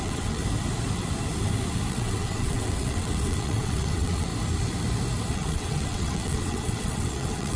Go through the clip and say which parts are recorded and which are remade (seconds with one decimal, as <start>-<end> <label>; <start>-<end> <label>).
0.0-0.4 remade; 0.4-1.9 recorded; 1.9-4.3 remade; 4.3-5.3 recorded; 5.3-7.6 remade